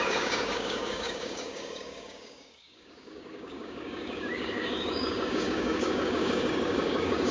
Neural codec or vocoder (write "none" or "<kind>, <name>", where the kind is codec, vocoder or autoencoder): codec, DAC